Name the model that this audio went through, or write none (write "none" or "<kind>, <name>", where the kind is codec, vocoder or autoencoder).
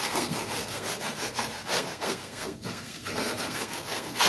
codec, SNAC